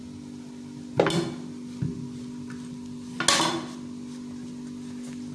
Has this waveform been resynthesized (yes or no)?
no